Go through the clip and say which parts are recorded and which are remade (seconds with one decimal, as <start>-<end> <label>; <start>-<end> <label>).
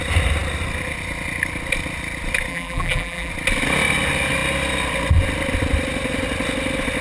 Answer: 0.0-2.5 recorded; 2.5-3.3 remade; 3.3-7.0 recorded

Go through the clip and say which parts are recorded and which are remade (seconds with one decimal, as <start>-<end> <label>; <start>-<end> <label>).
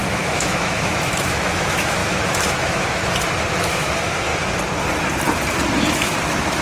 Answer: 0.0-3.0 remade; 3.0-3.5 recorded; 3.5-4.3 remade; 4.3-5.9 recorded; 5.9-6.6 remade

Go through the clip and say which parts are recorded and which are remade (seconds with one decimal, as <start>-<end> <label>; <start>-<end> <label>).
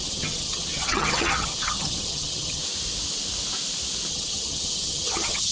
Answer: 0.0-2.6 remade; 2.6-4.1 recorded; 4.1-5.5 remade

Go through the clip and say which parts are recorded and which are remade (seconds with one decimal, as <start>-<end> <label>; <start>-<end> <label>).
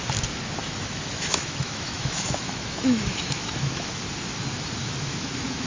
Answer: 0.0-0.6 recorded; 0.6-4.0 remade; 4.0-4.8 recorded; 4.8-5.7 remade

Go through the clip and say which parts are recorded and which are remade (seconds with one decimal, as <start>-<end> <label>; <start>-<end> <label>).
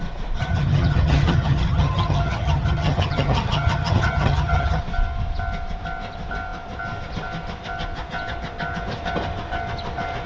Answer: 0.0-0.4 recorded; 0.4-4.8 remade; 4.8-10.3 recorded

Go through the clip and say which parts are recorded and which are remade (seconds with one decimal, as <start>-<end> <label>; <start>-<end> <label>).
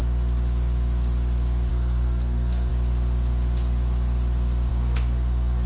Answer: 0.0-1.7 recorded; 1.7-2.7 remade; 2.7-4.7 recorded; 4.7-5.7 remade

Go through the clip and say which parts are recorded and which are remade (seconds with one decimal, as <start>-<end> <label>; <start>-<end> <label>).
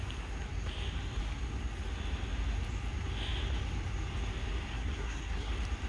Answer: 0.0-4.7 recorded; 4.7-5.5 remade; 5.5-5.9 recorded